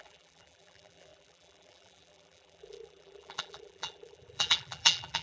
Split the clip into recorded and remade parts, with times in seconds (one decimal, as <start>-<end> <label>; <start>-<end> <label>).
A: 0.0-5.2 remade

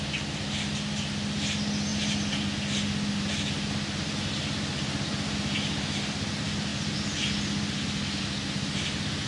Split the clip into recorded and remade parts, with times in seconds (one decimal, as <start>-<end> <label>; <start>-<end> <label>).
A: 0.0-9.3 recorded

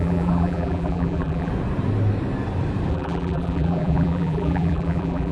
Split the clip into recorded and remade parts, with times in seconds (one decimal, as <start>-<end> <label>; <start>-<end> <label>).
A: 0.0-1.5 remade; 1.5-2.9 recorded; 2.9-5.3 remade

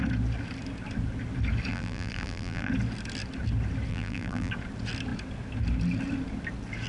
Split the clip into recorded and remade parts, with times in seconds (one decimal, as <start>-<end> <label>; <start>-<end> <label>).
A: 0.0-1.7 recorded; 1.7-2.7 remade; 2.7-3.9 recorded; 3.9-4.5 remade; 4.5-6.9 recorded